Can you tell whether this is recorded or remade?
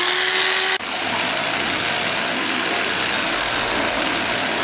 recorded